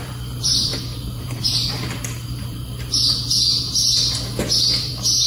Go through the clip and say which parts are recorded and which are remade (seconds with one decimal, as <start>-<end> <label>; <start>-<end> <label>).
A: 0.0-0.7 remade; 0.7-1.2 recorded; 1.2-3.0 remade; 3.0-5.3 recorded